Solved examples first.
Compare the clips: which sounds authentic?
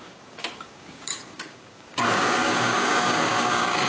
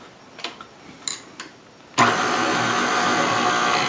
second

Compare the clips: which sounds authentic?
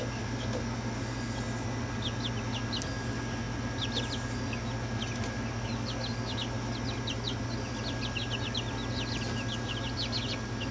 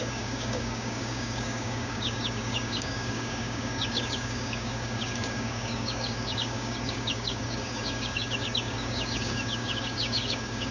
first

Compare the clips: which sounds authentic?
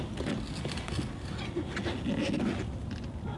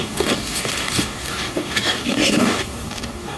first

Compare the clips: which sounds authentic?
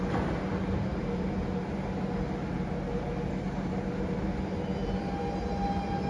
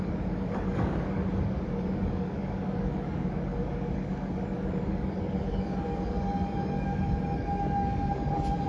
first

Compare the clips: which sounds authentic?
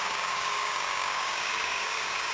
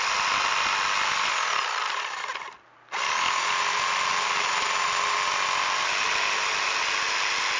second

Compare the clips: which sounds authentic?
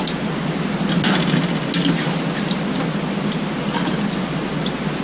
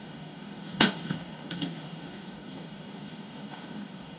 first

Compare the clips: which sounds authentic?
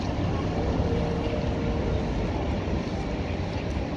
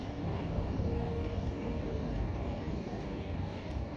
first